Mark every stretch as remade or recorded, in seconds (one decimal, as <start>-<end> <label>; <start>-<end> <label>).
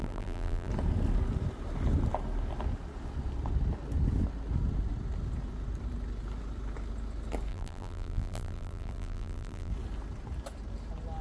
0.0-0.7 remade; 0.7-7.5 recorded; 7.5-9.7 remade; 9.7-11.2 recorded